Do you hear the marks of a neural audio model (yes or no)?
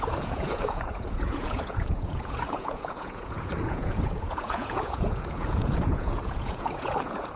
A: yes